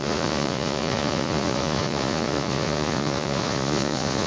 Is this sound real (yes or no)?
no